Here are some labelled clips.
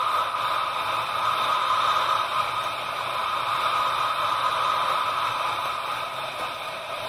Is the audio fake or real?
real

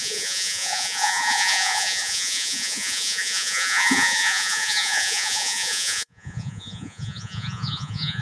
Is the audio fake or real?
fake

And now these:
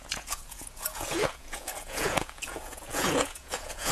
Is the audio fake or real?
fake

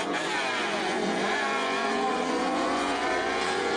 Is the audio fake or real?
fake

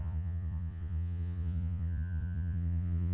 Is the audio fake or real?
fake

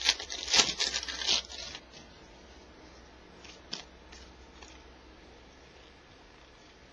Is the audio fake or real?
real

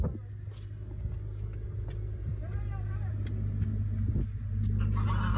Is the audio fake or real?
real